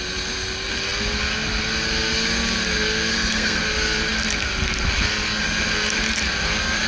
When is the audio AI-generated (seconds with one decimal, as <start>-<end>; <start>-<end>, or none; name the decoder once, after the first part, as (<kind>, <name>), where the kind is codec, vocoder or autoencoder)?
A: 3.1-3.6 (codec, SNAC)